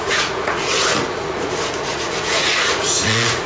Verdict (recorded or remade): remade